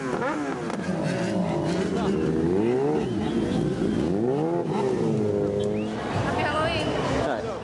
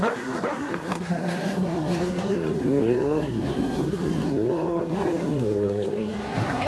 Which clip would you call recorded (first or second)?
first